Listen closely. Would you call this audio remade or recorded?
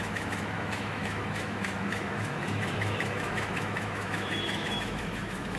remade